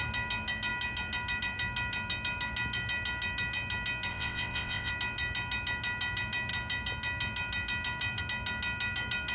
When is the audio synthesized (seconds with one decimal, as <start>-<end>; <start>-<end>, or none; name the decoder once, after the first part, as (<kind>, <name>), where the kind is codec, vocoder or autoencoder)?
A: 4.1-4.9 (vocoder, WaveNeXt)